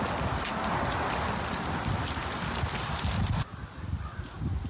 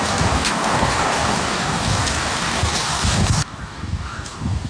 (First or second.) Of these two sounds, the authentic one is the first